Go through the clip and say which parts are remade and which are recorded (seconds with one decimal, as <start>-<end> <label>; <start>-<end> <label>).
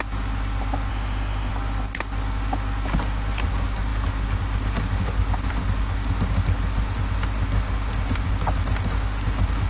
0.0-0.9 recorded; 0.9-1.5 remade; 1.5-9.7 recorded